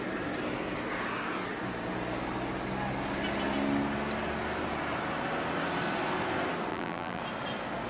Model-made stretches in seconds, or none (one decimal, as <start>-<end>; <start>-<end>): 6.7-7.2